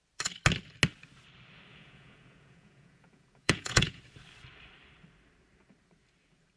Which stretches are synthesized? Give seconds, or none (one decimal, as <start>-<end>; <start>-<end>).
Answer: 1.7-4.0